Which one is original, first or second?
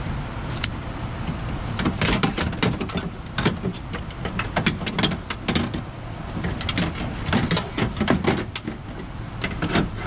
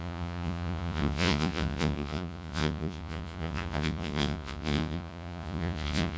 first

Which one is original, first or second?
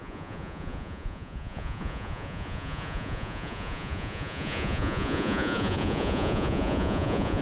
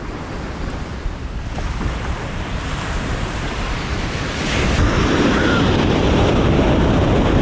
second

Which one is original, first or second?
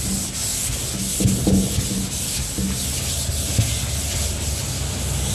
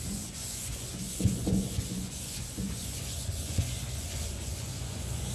first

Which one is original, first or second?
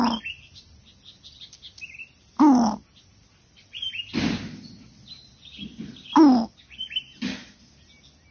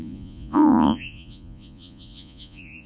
first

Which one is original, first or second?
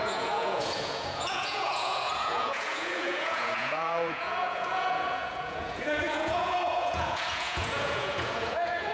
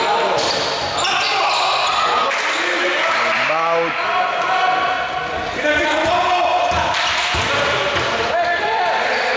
second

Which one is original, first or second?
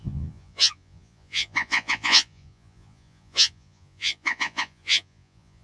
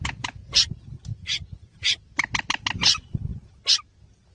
second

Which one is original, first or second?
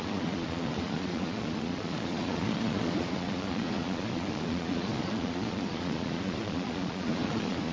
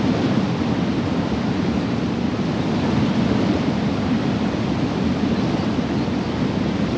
second